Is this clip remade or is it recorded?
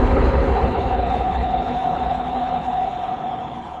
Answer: remade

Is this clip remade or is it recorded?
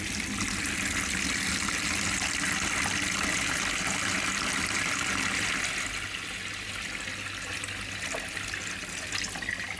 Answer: recorded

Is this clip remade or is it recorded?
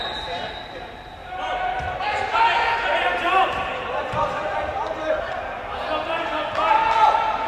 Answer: recorded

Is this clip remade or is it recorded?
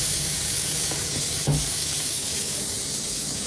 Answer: remade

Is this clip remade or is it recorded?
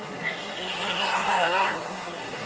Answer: remade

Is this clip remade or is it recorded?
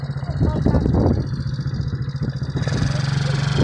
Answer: recorded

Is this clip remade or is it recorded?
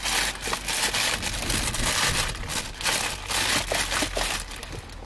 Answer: recorded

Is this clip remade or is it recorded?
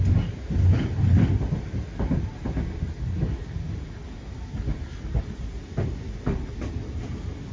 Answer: recorded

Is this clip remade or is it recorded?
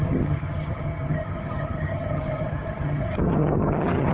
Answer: remade